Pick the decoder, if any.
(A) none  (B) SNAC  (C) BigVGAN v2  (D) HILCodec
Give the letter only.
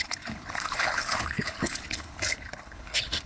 D